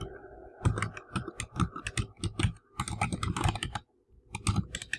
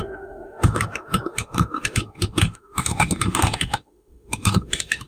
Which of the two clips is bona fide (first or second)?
first